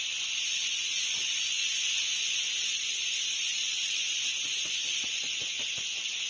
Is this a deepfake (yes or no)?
yes